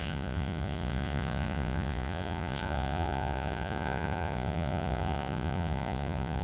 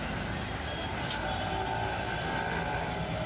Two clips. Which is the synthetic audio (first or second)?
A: first